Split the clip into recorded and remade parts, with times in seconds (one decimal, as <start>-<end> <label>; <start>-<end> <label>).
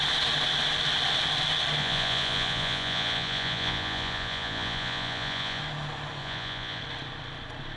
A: 0.0-1.8 recorded; 1.8-5.6 remade; 5.6-6.2 recorded; 6.2-6.8 remade; 6.8-7.8 recorded